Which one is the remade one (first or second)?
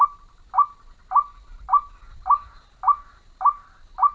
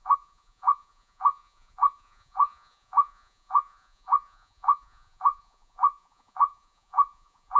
second